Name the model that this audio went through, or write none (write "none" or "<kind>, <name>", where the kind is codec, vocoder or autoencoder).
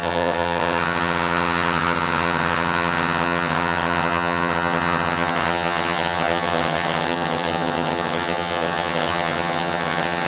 vocoder, HiFi-GAN